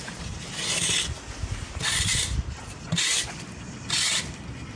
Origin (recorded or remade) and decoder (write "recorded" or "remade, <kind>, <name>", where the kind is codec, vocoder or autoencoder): recorded